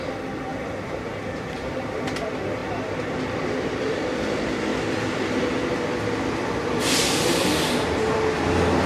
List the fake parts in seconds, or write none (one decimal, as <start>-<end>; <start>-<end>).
0.5-2.0; 2.6-4.0